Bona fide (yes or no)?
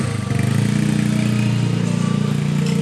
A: yes